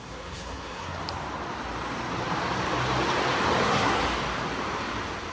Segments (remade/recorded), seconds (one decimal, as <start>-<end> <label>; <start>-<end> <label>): 0.0-1.0 remade; 1.0-3.6 recorded; 3.6-4.0 remade; 4.0-5.3 recorded